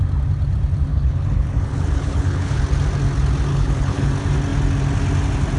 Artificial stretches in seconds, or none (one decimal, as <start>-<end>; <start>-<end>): 0.9-2.6; 3.5-4.1